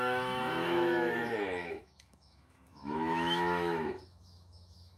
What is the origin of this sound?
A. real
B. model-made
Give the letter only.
B